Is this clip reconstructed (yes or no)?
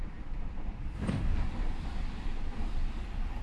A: yes